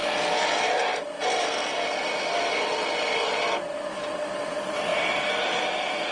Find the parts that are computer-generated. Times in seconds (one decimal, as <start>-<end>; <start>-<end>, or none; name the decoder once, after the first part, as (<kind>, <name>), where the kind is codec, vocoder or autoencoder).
4.9-6.1 (vocoder, BigVGAN v2)